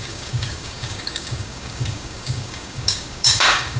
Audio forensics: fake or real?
fake